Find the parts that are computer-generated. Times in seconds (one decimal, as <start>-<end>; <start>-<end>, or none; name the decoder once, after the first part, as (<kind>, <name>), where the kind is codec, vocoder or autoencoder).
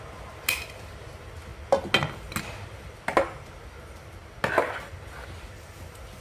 none